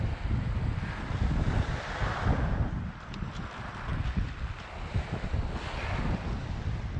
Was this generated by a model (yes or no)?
no